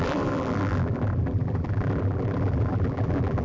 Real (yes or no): no